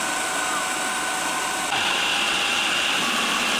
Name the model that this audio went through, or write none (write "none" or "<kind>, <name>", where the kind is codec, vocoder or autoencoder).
none